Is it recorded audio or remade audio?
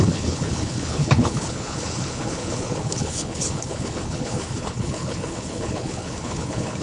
remade